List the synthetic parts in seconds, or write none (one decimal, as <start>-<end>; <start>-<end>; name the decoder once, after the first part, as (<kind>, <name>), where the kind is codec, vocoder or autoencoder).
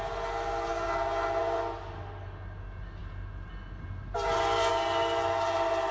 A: none